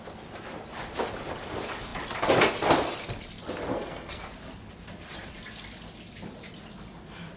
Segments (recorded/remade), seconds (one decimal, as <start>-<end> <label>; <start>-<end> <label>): 0.0-3.7 recorded; 3.7-4.2 remade; 4.2-7.4 recorded